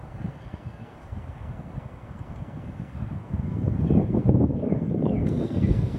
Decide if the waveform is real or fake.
fake